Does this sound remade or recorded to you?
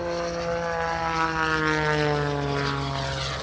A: recorded